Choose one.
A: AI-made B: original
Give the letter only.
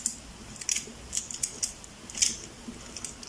B